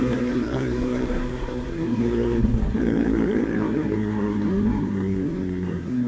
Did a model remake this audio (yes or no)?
yes